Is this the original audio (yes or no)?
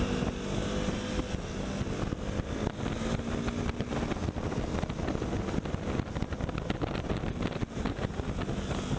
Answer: yes